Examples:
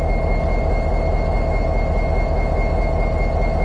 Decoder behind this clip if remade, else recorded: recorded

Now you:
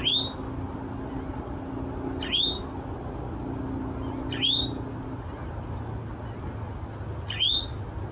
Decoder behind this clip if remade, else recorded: recorded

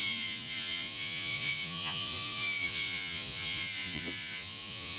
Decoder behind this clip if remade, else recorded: remade, vocoder, Vocos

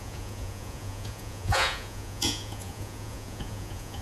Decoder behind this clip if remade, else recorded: remade, vocoder, Vocos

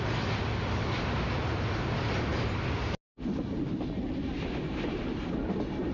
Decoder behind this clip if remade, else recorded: recorded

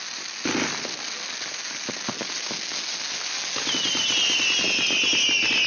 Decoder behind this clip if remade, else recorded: recorded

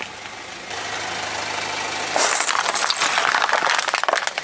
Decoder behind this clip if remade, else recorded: recorded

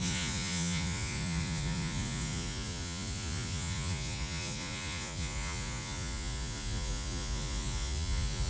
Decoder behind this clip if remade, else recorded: remade, vocoder, Vocos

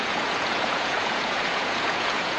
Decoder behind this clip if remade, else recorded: remade, vocoder, Vocos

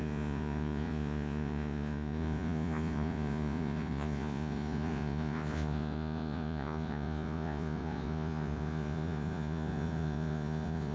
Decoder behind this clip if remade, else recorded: remade, vocoder, Vocos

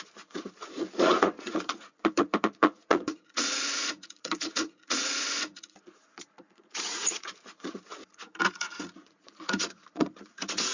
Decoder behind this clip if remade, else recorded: remade, vocoder, Vocos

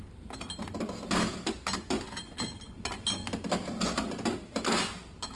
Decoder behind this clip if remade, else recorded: recorded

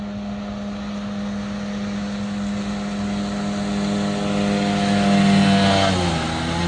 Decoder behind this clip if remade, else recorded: recorded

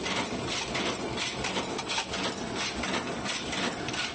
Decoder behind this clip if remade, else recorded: recorded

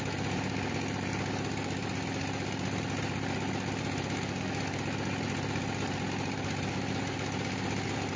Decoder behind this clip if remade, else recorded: recorded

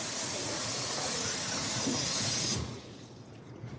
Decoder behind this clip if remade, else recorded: remade, vocoder, Vocos